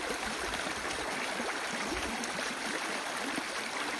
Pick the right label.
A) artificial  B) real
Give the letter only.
A